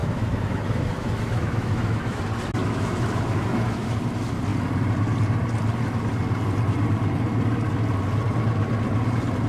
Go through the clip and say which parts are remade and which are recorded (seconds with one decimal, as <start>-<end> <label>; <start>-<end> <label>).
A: 0.0-2.2 remade; 2.2-2.6 recorded; 2.6-3.9 remade; 3.9-9.5 recorded